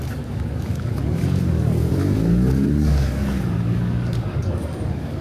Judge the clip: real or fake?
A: fake